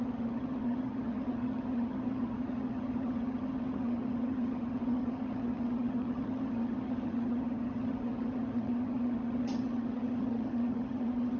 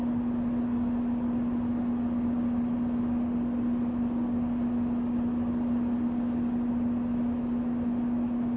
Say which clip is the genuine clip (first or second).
second